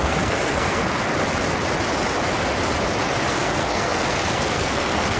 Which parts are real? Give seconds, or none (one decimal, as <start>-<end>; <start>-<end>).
0.9-3.2